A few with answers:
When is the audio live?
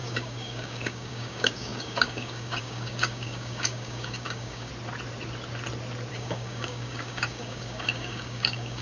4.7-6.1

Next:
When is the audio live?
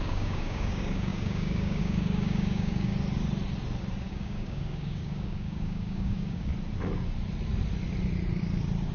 2.9-4.1; 6.5-8.9